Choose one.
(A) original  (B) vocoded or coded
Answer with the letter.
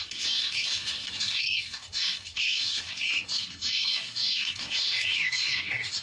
B